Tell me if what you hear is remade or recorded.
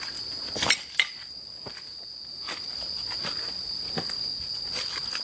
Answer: recorded